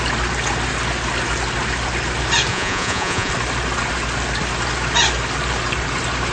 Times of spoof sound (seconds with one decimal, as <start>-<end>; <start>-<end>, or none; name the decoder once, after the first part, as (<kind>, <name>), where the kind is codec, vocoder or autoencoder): 2.5-3.3 (vocoder, Vocos)